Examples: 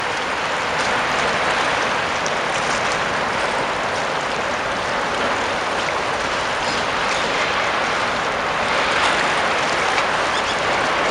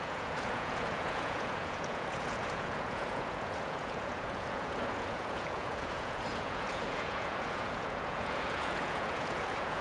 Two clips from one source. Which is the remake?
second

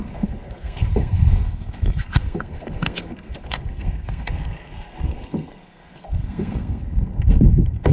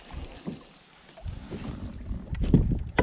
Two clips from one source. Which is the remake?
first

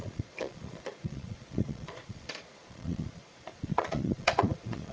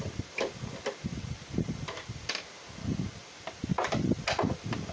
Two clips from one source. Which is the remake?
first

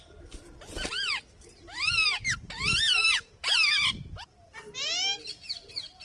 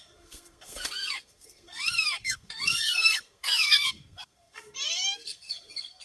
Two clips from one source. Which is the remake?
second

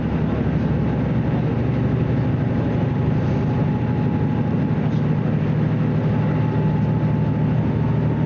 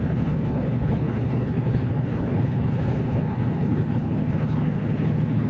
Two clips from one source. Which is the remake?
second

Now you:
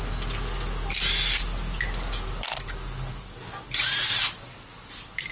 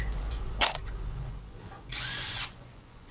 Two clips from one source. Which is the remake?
second